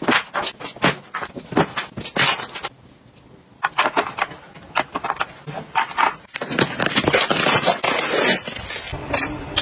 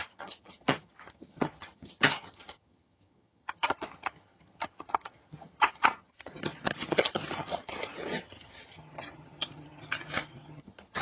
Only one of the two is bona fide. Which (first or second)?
first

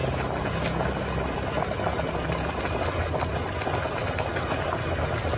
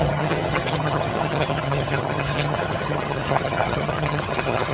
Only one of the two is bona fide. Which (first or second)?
first